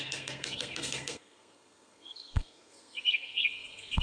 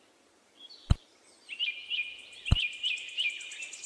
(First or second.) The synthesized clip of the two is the first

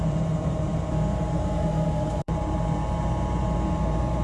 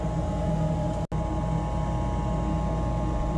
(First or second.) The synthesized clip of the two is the first